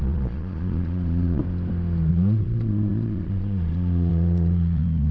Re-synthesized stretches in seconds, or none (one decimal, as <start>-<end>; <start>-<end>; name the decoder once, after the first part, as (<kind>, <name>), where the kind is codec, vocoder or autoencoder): 0.0-1.4 (vocoder, Vocos); 2.1-5.1